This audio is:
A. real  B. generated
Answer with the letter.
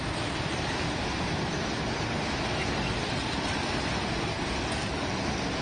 A